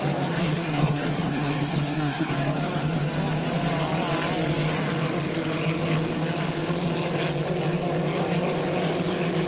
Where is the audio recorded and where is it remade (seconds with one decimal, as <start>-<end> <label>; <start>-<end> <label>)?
0.0-0.4 recorded; 0.4-2.3 remade; 2.3-9.5 recorded